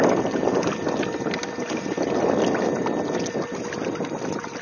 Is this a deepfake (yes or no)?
no